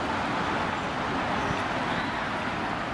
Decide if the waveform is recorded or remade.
recorded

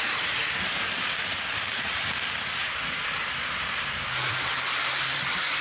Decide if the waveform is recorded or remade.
recorded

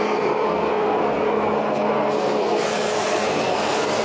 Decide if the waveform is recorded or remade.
remade